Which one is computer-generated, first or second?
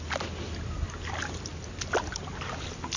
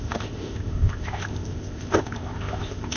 second